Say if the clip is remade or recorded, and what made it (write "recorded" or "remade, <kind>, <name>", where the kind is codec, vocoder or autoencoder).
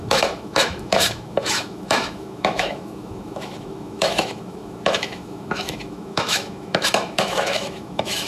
remade, autoencoder, DAC-VAE